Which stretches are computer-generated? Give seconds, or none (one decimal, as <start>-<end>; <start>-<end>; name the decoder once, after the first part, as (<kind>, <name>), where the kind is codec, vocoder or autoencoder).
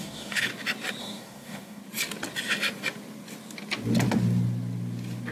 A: 0.0-0.5 (codec, DAC); 1.0-1.8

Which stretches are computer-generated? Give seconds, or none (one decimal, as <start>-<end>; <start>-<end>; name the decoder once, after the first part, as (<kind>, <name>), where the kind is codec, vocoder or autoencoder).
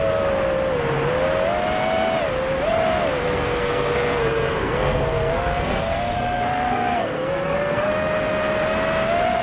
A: 3.2-7.9 (codec, SNAC)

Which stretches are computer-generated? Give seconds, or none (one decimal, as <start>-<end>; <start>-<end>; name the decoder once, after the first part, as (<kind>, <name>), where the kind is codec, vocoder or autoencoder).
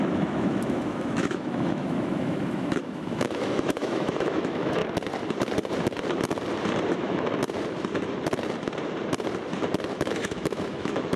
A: 0.0-4.8 (autoencoder, DAC-VAE); 6.9-7.4; 9.9-11.2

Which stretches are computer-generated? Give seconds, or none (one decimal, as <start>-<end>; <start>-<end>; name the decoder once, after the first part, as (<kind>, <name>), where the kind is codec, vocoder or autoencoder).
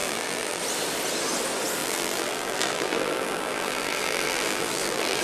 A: 0.0-0.6 (vocoder, BigVGAN v2); 1.8-5.2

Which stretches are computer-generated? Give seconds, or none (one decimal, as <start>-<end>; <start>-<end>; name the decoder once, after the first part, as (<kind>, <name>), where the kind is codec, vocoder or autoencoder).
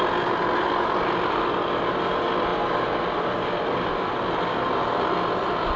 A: none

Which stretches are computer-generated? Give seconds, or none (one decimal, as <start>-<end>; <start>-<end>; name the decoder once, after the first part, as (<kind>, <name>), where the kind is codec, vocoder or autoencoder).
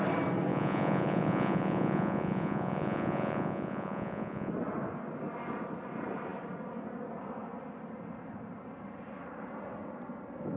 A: 0.5-4.5 (vocoder, Vocos)